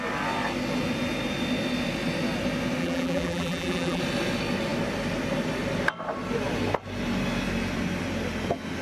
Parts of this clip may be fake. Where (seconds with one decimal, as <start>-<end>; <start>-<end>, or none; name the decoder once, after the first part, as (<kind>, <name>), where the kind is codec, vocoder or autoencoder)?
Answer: 2.8-4.0 (vocoder, BigVGAN v2)